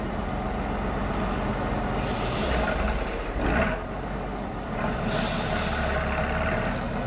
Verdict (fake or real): real